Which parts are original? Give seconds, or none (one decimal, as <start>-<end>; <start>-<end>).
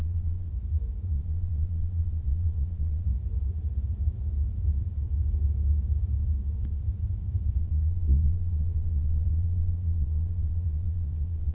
0.5-1.1; 3.1-7.6